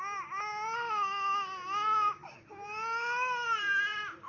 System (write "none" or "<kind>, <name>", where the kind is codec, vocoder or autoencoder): none